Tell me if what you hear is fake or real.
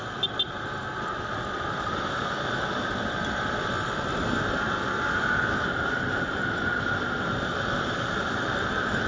real